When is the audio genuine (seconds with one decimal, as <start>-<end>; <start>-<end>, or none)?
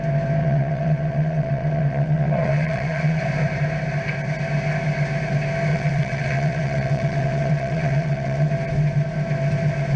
0.0-0.4; 3.2-5.7; 8.5-10.0